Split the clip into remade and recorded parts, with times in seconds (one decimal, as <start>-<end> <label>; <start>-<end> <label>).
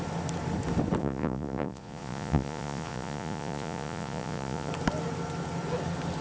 0.0-1.0 recorded; 1.0-4.7 remade; 4.7-6.2 recorded